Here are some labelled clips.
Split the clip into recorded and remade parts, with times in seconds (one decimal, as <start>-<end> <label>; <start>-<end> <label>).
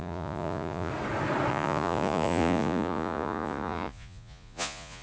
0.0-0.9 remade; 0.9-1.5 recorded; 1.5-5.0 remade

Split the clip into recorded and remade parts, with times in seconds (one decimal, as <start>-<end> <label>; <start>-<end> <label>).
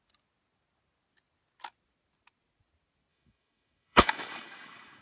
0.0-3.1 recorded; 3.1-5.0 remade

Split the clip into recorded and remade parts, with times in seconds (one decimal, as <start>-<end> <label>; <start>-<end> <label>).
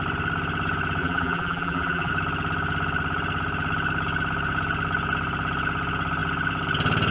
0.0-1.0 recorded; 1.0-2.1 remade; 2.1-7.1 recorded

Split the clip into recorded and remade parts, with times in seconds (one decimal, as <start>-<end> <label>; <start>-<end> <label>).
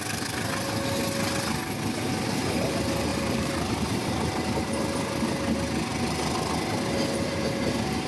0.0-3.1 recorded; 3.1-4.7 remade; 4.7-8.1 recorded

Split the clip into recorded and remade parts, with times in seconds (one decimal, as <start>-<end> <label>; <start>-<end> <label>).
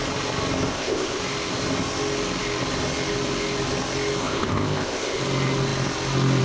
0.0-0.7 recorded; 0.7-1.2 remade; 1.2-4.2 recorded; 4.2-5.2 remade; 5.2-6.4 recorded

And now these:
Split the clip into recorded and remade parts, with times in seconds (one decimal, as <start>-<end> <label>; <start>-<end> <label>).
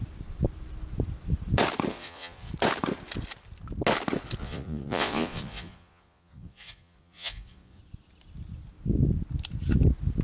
0.0-1.9 recorded; 1.9-2.5 remade; 2.5-4.4 recorded; 4.4-7.8 remade; 7.8-10.2 recorded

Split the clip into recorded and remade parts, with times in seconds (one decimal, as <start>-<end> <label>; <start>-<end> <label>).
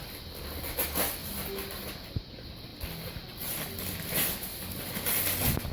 0.0-1.2 recorded; 1.2-2.1 remade; 2.1-2.7 recorded; 2.7-4.8 remade; 4.8-5.7 recorded